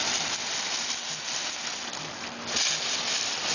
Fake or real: real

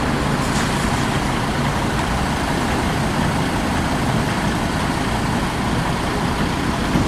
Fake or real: real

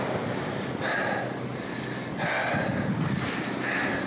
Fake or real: real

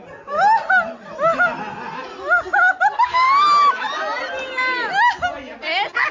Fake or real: real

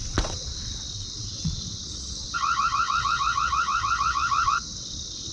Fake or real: fake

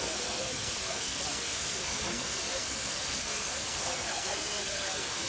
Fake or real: fake